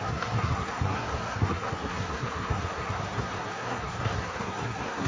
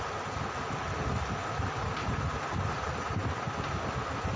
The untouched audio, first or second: second